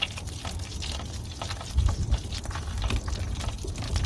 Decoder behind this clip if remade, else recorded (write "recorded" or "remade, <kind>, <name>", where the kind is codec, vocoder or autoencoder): recorded